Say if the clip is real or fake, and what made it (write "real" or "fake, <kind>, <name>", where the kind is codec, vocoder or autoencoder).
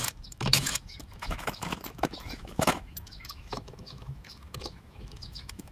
fake, autoencoder, DAC-VAE